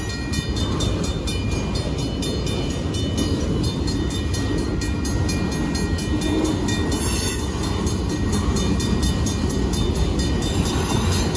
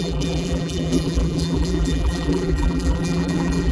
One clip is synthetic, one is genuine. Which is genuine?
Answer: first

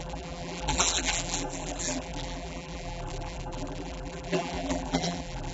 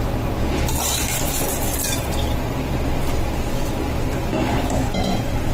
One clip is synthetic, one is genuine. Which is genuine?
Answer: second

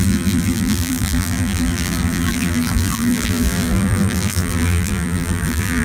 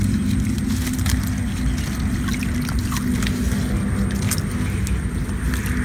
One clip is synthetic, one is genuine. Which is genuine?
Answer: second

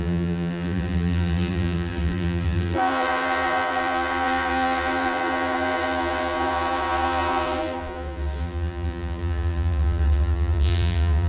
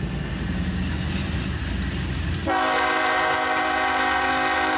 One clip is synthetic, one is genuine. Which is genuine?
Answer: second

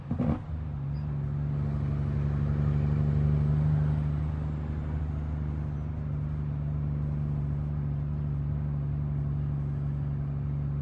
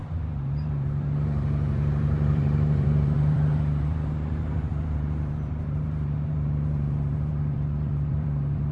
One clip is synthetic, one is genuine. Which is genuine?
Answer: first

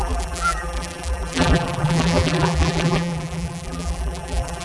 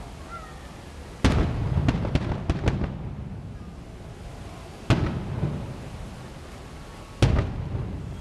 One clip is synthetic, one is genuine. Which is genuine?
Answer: second